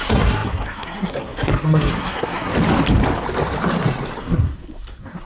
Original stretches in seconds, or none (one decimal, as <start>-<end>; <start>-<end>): 2.5-4.2